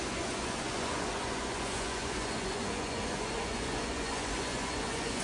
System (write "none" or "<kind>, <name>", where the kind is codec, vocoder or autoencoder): vocoder, Vocos